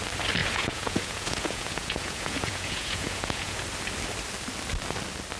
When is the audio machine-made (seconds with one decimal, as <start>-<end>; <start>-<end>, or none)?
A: 0.4-3.6